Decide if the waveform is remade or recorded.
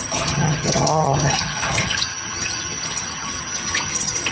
remade